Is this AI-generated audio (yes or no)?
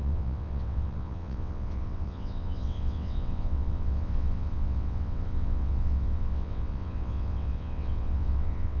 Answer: yes